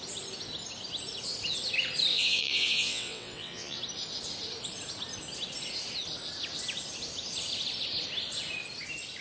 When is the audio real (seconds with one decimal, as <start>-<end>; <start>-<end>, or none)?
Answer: 0.0-2.1; 3.8-9.2